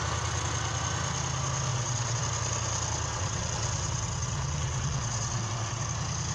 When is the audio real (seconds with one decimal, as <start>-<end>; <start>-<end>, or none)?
0.0-1.7; 2.2-3.1; 5.8-6.3